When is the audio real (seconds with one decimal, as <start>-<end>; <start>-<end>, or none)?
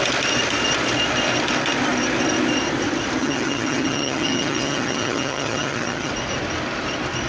0.0-3.2; 6.1-7.3